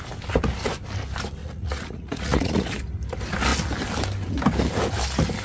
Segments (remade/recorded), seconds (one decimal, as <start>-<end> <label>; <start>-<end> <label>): 0.0-1.4 recorded; 1.4-2.7 remade; 2.7-5.4 recorded